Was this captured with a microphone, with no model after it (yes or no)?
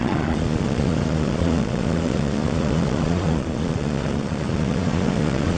no